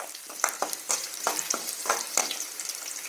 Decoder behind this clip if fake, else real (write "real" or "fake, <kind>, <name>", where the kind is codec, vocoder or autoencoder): fake, vocoder, BigVGAN v2